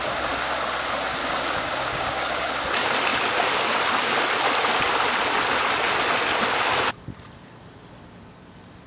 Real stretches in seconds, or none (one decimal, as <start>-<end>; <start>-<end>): 0.0-1.2; 2.5-8.9